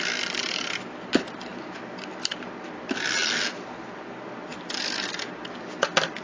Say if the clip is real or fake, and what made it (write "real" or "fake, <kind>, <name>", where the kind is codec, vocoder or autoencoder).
real